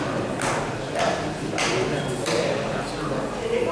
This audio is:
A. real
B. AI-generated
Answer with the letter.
A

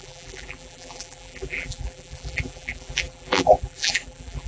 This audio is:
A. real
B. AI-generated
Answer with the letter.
B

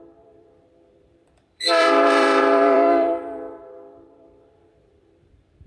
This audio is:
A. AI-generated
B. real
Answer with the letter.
A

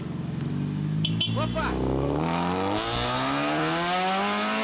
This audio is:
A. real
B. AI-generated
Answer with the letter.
A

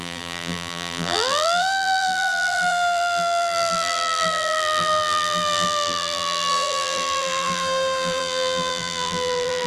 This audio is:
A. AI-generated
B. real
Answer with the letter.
A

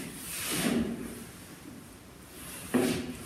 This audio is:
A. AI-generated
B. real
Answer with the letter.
B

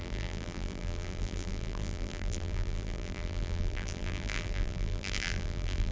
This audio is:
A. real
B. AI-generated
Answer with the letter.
B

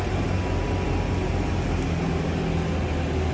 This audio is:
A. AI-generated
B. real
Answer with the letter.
B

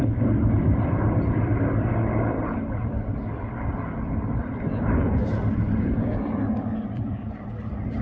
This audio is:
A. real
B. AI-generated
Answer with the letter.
B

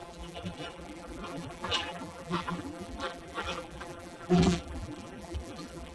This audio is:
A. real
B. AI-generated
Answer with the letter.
B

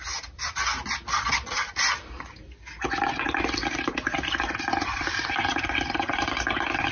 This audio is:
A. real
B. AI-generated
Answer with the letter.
A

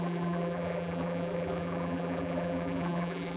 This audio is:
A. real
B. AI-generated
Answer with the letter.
B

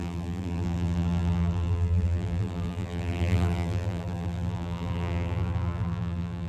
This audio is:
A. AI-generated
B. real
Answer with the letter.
A